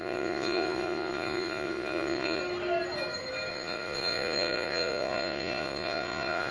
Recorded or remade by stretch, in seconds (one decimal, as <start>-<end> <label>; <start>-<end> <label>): 0.0-2.4 remade; 2.4-3.5 recorded; 3.5-6.5 remade